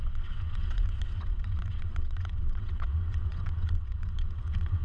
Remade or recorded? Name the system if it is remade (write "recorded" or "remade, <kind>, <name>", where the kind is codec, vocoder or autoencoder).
remade, vocoder, WaveNeXt